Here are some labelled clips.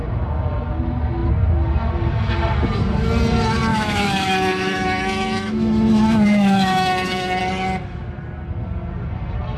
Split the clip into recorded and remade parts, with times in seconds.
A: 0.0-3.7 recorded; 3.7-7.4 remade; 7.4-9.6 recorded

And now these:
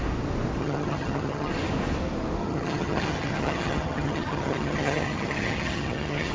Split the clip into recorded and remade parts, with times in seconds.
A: 0.0-0.6 recorded; 0.6-1.5 remade; 1.5-2.4 recorded; 2.4-6.3 remade

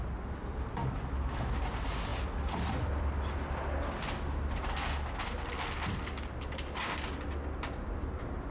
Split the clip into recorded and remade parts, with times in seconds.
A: 0.0-8.5 recorded

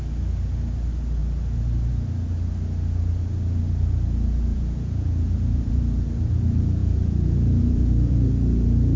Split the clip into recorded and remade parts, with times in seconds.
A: 0.0-4.5 recorded; 4.5-5.8 remade; 5.8-6.8 recorded; 6.8-8.3 remade; 8.3-9.0 recorded